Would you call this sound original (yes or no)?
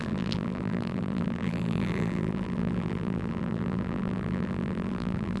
no